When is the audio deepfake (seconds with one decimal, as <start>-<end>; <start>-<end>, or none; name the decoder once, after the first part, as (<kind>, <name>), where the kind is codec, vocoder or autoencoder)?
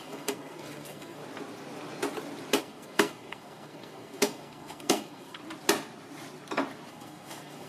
0.0-1.2 (codec, SNAC); 2.6-5.4; 6.9-7.7